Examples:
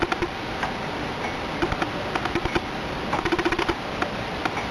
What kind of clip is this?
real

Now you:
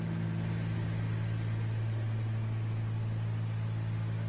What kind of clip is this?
real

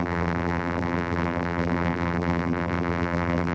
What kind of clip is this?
fake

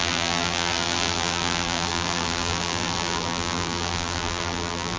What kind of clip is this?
fake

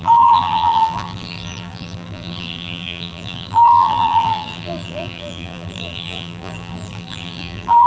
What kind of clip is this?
fake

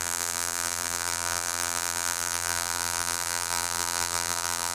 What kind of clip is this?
fake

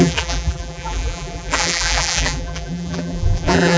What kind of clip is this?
fake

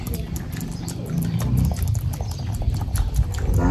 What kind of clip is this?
fake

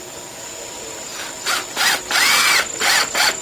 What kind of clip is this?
real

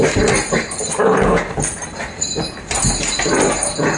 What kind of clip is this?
fake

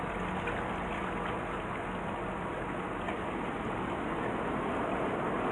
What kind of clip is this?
real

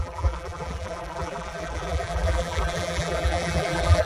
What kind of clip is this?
fake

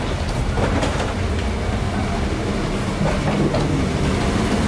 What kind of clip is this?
real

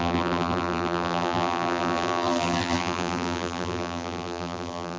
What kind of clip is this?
fake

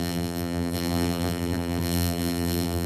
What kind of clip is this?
fake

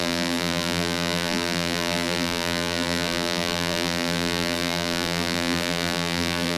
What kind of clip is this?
fake